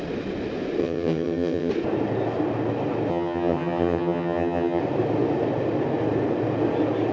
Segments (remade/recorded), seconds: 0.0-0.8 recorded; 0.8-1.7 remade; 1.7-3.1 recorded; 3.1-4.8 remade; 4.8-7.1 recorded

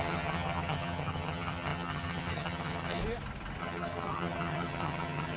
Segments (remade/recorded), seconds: 0.0-3.0 remade; 3.0-3.6 recorded; 3.6-5.4 remade

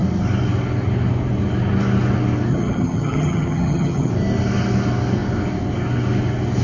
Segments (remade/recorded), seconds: 0.0-2.5 recorded; 2.5-4.1 remade; 4.1-6.6 recorded

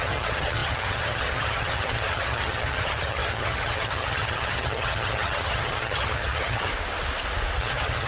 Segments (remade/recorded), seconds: 0.0-6.7 remade; 6.7-7.6 recorded; 7.6-8.1 remade

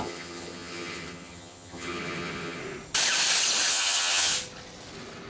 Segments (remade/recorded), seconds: 0.0-2.6 remade; 2.6-3.7 recorded; 3.7-4.3 remade; 4.3-5.3 recorded

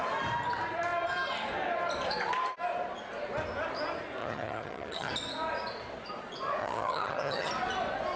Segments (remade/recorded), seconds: 0.0-4.2 recorded; 4.2-5.1 remade; 5.1-6.6 recorded; 6.6-7.5 remade; 7.5-8.2 recorded